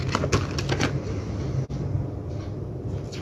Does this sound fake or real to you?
real